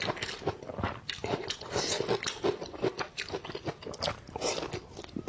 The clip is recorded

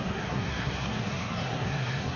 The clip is remade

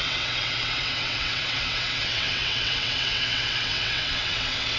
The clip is remade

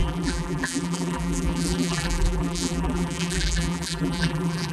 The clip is remade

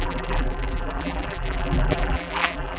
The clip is remade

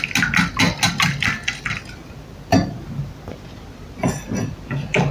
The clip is recorded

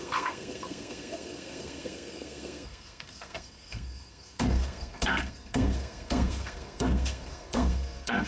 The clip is remade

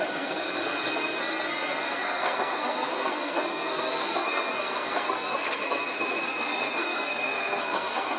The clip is remade